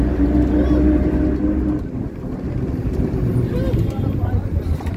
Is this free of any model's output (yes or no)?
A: yes